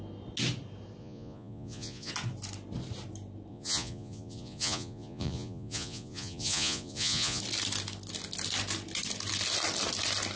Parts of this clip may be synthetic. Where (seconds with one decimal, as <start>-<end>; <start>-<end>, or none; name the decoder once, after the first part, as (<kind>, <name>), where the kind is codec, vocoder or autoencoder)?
1.0-2.1 (vocoder, Vocos); 3.5-7.4